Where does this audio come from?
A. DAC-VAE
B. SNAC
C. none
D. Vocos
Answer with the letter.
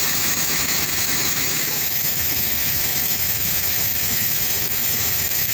A